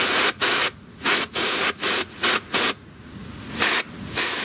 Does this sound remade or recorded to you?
remade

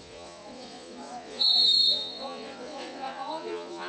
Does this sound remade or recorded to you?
remade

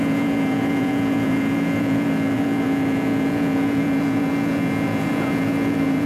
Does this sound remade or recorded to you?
remade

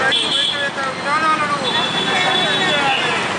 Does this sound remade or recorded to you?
recorded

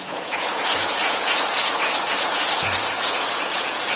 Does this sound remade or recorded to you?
remade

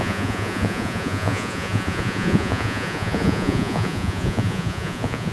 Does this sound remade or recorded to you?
remade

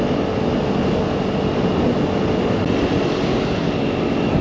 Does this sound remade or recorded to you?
recorded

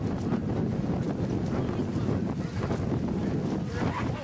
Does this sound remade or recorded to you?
recorded